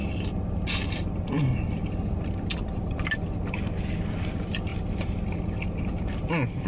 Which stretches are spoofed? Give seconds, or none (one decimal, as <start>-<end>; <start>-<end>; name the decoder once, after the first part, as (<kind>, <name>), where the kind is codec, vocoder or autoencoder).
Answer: none